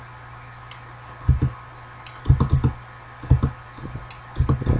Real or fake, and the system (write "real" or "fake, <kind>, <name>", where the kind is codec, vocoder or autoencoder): real